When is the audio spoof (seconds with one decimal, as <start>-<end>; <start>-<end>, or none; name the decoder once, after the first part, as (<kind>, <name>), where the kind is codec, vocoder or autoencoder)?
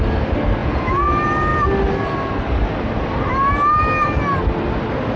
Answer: 0.6-1.1 (vocoder, Vocos)